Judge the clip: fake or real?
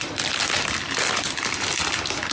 fake